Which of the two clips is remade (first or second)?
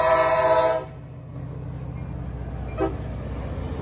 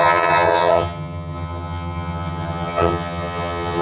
second